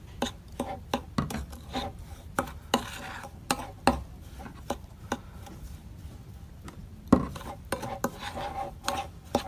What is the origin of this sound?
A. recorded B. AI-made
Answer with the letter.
A